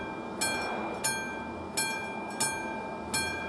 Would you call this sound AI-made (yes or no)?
no